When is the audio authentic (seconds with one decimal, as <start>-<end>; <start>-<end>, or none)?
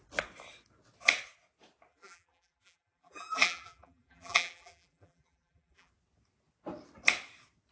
0.0-1.9; 5.9-7.7